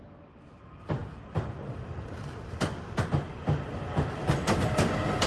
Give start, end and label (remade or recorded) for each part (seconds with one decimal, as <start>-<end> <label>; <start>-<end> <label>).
0.0-1.0 recorded; 1.0-4.2 remade; 4.2-5.3 recorded